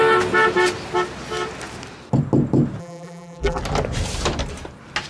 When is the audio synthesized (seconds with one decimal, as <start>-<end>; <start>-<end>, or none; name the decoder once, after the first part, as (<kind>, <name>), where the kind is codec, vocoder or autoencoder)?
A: 2.8-3.6 (vocoder, BigVGAN v2)